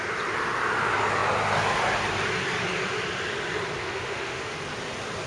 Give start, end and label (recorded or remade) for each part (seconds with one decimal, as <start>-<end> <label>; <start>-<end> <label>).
0.0-3.8 recorded; 3.8-4.5 remade; 4.5-5.3 recorded